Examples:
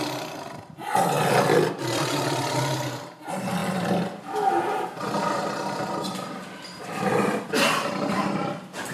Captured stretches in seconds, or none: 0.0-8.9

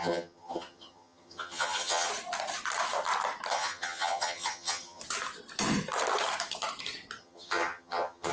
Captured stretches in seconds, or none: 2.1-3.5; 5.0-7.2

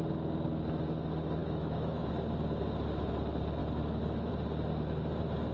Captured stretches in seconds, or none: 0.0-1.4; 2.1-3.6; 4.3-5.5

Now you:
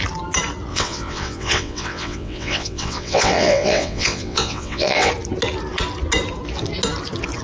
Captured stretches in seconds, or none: 0.0-0.7; 5.1-7.4